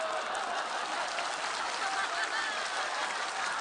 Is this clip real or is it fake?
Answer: real